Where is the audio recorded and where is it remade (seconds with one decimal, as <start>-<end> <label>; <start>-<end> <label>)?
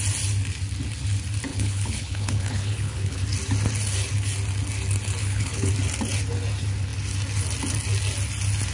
0.0-1.5 recorded; 1.5-3.2 remade; 3.2-5.2 recorded; 5.2-5.7 remade; 5.7-8.7 recorded